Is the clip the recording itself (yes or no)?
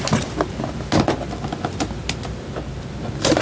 yes